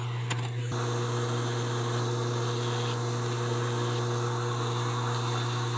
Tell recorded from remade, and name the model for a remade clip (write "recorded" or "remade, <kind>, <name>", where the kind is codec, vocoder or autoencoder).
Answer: recorded